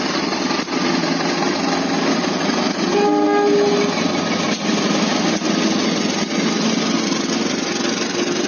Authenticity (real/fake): real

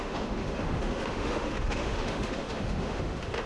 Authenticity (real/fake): fake